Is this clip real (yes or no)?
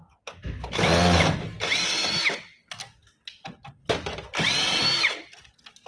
yes